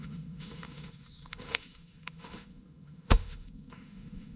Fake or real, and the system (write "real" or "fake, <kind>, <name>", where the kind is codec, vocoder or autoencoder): fake, autoencoder, DAC-VAE